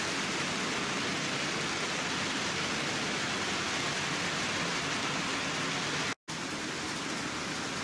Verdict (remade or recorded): recorded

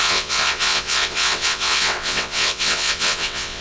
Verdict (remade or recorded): remade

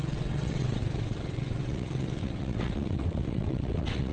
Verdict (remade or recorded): remade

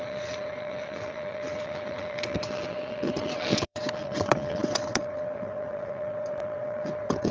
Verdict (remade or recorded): remade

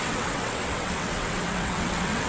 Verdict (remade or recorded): remade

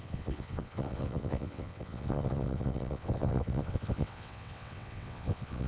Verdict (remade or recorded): remade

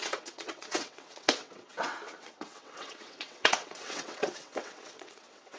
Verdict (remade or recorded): remade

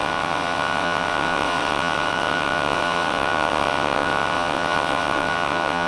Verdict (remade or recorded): remade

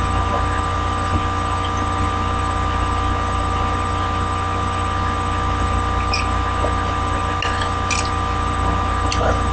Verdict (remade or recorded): recorded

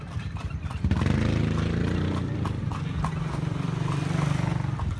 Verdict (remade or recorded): recorded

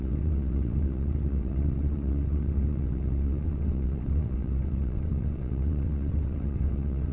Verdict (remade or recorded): remade